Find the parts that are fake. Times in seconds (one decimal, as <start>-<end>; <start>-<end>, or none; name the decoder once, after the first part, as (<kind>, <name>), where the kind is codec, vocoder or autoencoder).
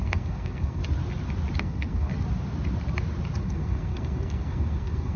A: 0.0-0.8 (codec, SNAC); 1.6-2.1; 3.4-5.2